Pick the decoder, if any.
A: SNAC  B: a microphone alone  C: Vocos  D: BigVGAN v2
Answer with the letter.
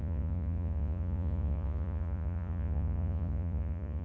C